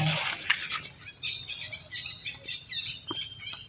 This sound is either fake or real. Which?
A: real